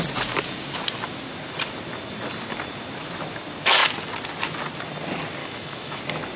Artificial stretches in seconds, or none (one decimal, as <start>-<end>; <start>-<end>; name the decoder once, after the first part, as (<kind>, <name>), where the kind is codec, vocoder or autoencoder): 5.4-6.0 (autoencoder, DAC-VAE)